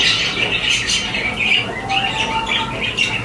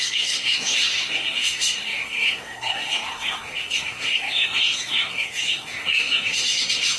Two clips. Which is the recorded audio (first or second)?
first